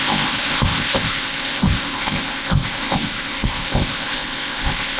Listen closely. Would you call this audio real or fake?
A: fake